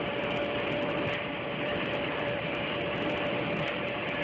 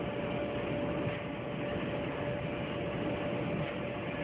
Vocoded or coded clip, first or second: first